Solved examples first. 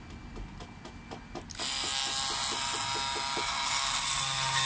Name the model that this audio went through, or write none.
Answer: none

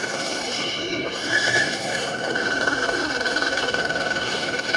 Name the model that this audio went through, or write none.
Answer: codec, SNAC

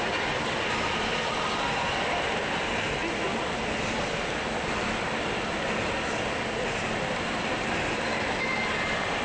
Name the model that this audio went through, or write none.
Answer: none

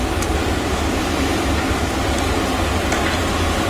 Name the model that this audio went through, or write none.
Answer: none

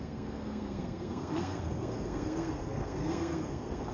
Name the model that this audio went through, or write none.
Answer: codec, SNAC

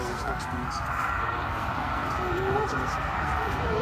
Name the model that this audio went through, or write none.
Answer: codec, SNAC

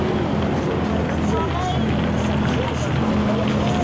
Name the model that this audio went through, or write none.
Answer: none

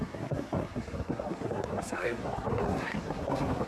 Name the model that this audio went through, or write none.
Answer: codec, SNAC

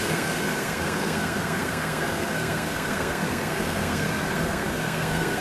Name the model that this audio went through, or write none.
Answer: codec, SNAC